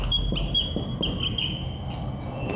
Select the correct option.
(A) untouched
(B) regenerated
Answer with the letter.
A